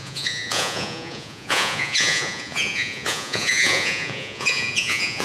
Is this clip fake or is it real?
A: fake